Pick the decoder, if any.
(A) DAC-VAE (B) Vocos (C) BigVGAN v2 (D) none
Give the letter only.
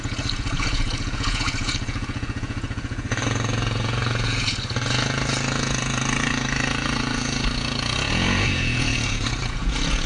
B